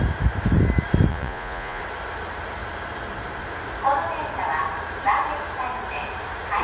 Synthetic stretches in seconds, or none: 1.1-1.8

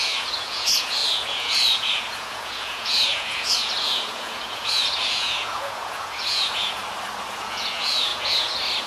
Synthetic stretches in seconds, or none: 0.0-6.8; 7.3-8.9

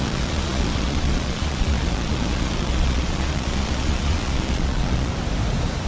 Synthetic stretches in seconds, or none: 0.0-5.1

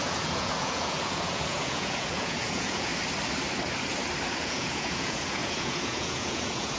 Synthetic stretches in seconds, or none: 0.0-2.9; 4.4-6.8